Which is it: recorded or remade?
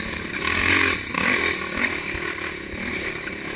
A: remade